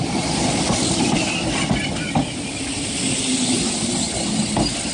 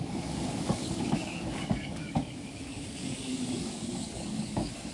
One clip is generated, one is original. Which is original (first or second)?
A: first